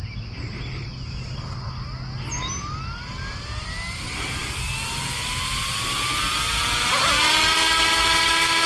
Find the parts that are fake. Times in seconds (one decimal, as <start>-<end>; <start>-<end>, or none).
none